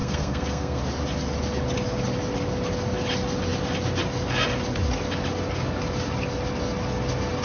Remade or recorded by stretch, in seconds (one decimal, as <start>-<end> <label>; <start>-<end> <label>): 0.0-0.8 remade; 0.8-7.4 recorded